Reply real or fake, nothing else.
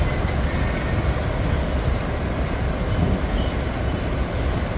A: real